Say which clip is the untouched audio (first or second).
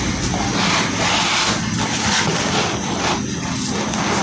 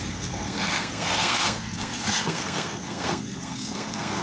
first